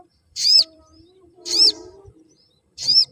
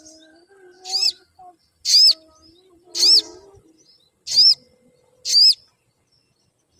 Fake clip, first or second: first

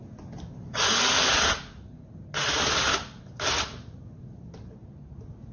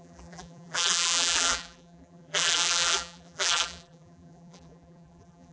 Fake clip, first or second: second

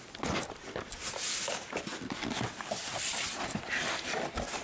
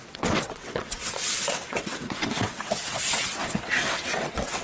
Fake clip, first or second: second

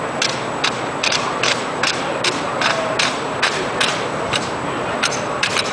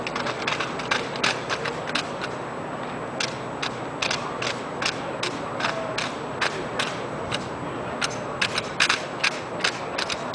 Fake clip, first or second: first